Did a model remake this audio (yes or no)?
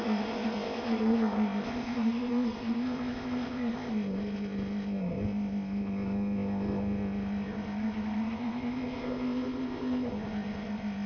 yes